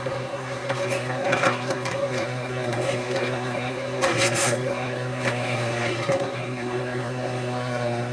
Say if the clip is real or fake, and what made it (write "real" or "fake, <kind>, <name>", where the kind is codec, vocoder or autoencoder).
fake, codec, SNAC